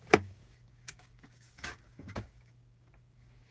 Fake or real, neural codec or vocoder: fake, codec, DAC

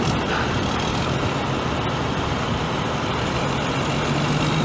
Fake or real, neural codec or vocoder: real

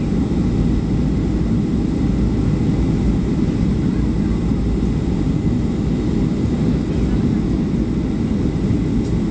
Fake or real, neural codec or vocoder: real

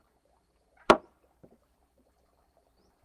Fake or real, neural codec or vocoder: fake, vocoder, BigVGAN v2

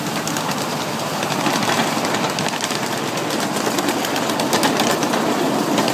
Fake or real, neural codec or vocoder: real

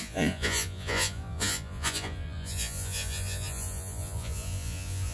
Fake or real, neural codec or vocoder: fake, vocoder, Vocos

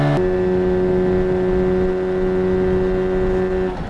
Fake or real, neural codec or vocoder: real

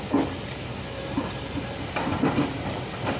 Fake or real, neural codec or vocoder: real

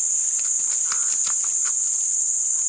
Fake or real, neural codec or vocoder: real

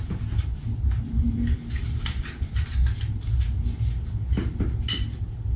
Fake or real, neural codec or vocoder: real